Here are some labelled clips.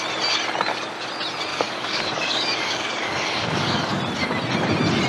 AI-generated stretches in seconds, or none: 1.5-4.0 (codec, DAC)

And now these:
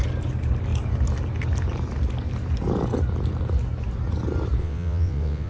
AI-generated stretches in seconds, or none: 4.6-5.5 (vocoder, WaveNeXt)

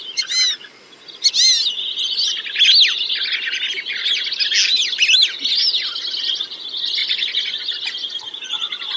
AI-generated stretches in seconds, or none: none